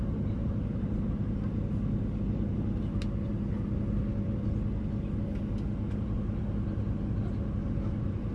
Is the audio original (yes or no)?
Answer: yes